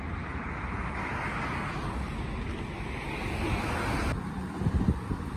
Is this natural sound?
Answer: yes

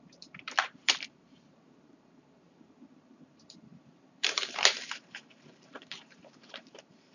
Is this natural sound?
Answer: no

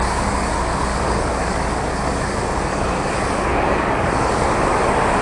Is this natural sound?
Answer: no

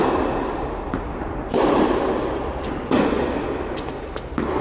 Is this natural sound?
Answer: no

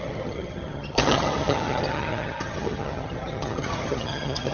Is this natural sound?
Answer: no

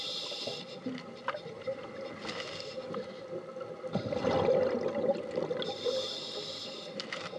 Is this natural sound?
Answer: yes